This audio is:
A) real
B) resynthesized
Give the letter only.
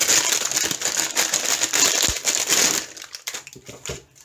A